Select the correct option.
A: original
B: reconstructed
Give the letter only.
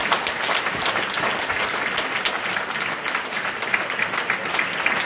A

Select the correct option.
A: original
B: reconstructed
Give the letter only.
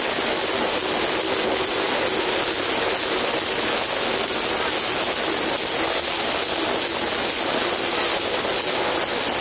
A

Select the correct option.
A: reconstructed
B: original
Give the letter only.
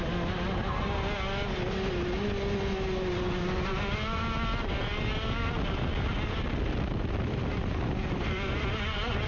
B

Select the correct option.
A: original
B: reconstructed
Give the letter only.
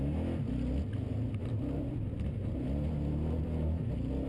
A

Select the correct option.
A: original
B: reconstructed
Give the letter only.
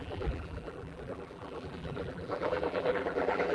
B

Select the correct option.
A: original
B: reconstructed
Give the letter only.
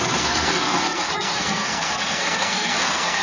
B